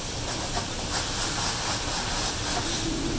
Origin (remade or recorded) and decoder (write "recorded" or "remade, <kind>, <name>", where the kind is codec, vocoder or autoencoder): recorded